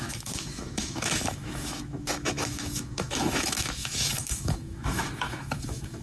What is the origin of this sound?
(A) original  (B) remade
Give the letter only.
B